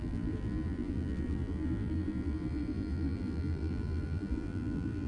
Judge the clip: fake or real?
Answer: fake